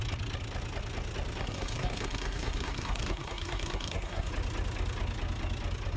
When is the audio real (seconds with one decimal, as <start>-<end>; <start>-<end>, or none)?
0.0-1.4; 4.3-6.0